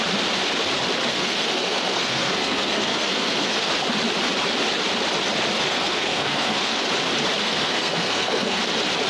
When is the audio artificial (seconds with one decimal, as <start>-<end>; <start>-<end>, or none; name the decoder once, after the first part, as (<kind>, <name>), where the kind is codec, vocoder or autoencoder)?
1.1-3.7 (codec, SNAC); 5.7-6.8; 7.4-8.6

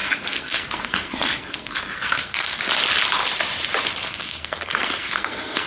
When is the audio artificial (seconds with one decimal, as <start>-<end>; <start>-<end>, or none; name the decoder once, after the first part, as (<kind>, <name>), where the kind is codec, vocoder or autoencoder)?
0.0-2.6 (codec, SNAC); 4.0-5.7

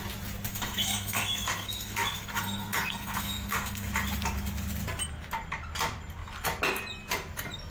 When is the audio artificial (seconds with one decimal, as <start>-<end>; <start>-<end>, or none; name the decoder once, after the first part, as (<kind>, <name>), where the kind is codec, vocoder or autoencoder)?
0.5-3.9 (codec, SNAC)

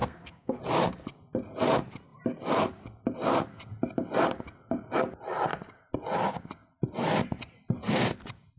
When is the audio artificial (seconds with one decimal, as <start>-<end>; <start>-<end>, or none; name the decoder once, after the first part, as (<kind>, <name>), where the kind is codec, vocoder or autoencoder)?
0.0-0.6 (codec, SNAC)

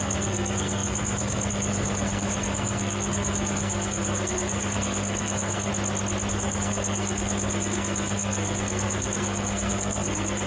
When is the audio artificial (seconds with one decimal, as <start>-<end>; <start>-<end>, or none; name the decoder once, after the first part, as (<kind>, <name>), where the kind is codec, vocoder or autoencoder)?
0.0-5.7 (codec, SNAC); 6.3-10.5